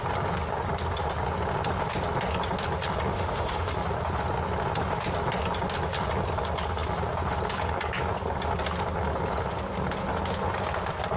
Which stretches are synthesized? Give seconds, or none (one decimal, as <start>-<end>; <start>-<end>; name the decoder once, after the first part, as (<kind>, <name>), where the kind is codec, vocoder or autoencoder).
3.1-3.7 (autoencoder, DAC-VAE)